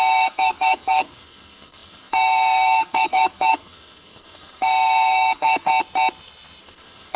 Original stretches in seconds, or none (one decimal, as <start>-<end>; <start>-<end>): 5.7-6.6